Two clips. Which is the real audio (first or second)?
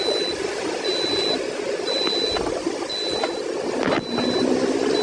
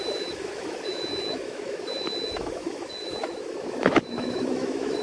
first